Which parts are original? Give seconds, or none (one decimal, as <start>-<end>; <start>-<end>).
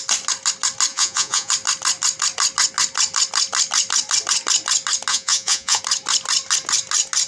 0.0-0.9; 1.5-5.1; 5.8-7.3